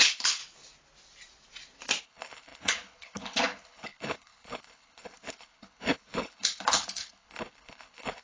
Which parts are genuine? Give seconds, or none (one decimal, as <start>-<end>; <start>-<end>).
0.4-2.0